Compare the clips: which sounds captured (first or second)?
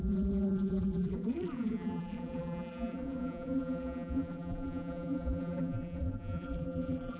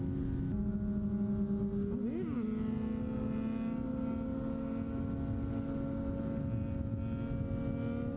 second